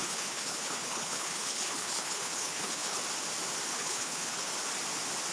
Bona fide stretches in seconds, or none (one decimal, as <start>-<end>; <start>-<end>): 3.0-3.7; 4.5-5.3